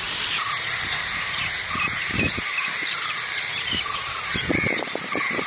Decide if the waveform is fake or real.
fake